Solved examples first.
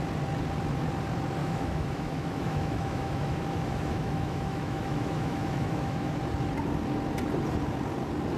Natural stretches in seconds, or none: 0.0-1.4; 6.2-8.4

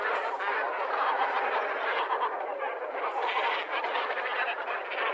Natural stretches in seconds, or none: 0.0-5.1

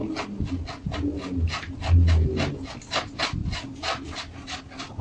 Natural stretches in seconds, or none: 0.0-5.0

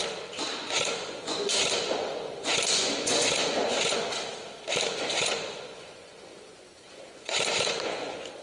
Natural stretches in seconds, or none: 0.0-0.6; 4.3-4.9